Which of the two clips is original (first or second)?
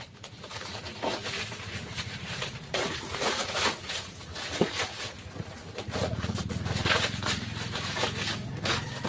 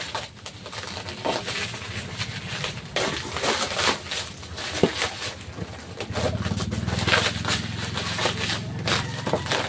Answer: second